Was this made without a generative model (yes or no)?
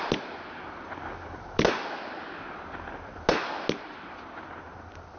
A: yes